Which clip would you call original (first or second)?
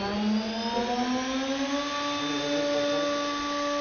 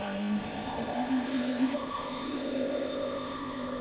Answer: first